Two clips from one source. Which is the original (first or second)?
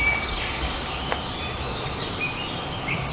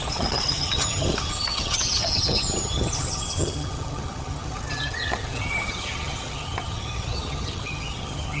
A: first